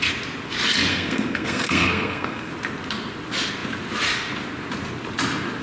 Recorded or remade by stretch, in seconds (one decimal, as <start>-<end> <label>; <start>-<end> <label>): 0.0-0.9 recorded; 0.9-2.5 remade; 2.5-5.6 recorded